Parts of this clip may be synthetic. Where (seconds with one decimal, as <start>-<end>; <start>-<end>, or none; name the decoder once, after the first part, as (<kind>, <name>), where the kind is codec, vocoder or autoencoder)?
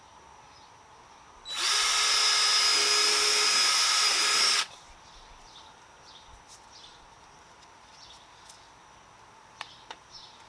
none